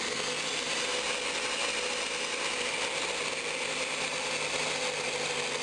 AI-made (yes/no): no